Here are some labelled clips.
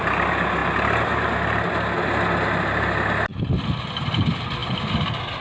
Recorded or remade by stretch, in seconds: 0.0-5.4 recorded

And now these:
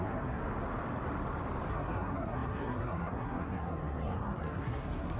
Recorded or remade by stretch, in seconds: 0.0-0.4 remade; 0.4-1.7 recorded; 1.7-5.2 remade

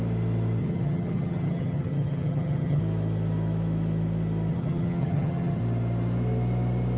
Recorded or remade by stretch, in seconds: 0.0-0.6 recorded; 0.6-2.8 remade; 2.8-4.5 recorded; 4.5-5.6 remade; 5.6-7.0 recorded